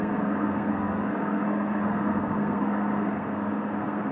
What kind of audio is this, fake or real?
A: fake